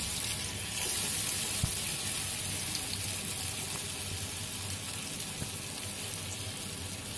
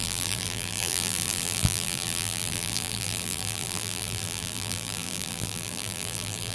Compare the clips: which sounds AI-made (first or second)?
second